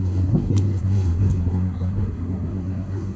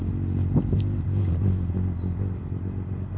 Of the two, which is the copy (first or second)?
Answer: first